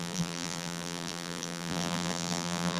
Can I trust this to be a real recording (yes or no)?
no